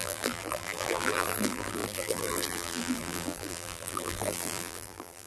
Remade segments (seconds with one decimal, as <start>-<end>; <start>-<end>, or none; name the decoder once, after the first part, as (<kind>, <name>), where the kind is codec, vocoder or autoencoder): 0.0-5.3 (vocoder, BigVGAN v2)